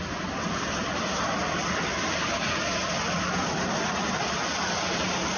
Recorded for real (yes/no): no